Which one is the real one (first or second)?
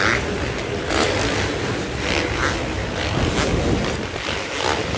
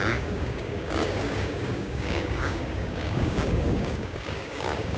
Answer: first